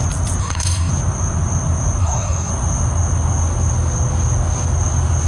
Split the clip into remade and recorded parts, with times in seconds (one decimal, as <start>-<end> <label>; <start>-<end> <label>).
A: 0.0-0.4 recorded; 0.4-0.9 remade; 0.9-2.0 recorded; 2.0-2.5 remade; 2.5-5.3 recorded